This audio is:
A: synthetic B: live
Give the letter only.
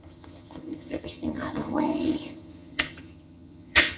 A